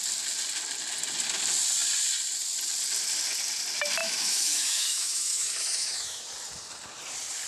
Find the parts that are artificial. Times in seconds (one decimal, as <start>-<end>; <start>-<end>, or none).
4.0-6.2